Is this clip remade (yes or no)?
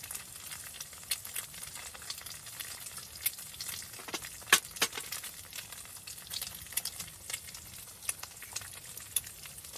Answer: no